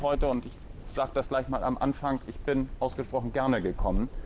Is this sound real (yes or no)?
yes